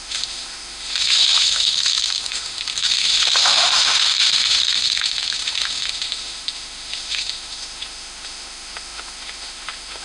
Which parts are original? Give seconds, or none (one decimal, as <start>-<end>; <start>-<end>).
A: none